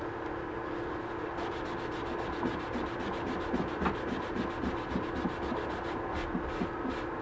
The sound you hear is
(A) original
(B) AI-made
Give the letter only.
A